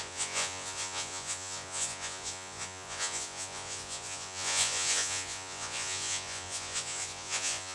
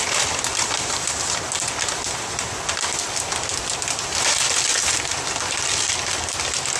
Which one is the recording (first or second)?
second